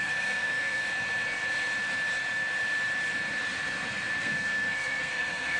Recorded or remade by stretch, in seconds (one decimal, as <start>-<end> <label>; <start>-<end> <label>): 0.0-0.8 remade; 0.8-4.2 recorded; 4.2-5.6 remade